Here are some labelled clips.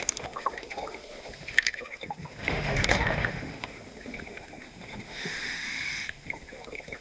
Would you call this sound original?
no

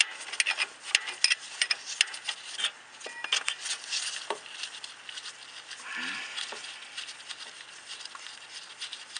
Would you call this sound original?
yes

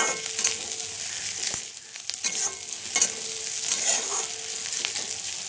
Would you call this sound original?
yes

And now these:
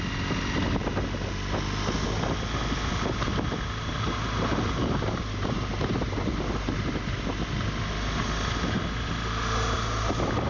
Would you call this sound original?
yes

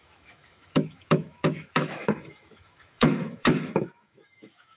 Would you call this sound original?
no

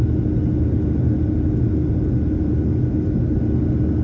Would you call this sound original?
yes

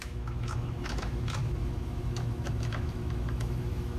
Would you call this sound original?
no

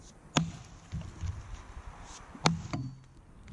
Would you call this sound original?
yes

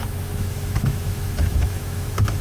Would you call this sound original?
no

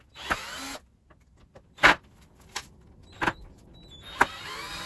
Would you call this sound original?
yes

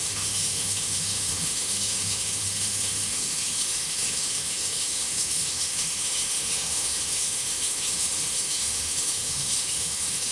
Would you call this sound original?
no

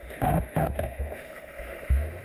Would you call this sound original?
no